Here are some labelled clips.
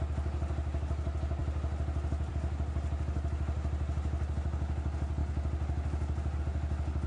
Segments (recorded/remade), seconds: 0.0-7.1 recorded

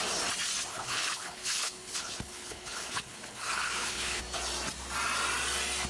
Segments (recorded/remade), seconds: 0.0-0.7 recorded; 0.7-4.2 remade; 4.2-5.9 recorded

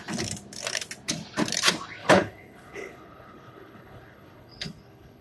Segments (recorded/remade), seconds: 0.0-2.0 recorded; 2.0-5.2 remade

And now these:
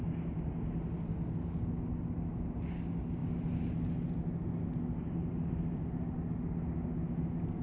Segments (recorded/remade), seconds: 0.0-7.6 recorded

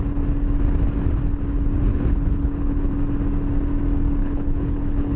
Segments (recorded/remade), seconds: 0.0-1.9 recorded; 1.9-2.9 remade; 2.9-4.2 recorded; 4.2-5.2 remade

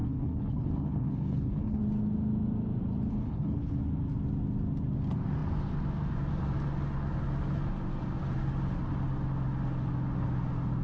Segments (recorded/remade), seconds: 0.0-1.8 remade; 1.8-3.1 recorded; 3.1-3.8 remade; 3.8-10.8 recorded